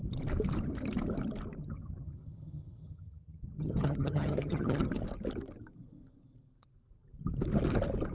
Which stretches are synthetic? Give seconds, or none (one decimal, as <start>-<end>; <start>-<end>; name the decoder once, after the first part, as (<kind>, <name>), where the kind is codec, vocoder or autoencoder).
1.6-4.9 (vocoder, HiFi-GAN)